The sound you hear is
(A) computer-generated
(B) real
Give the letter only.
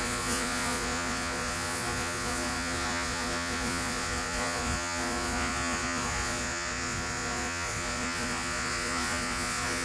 A